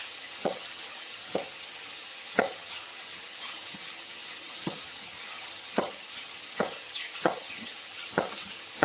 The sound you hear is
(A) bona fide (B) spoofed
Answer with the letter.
B